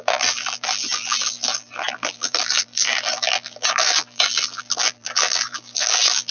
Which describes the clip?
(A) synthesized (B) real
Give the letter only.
A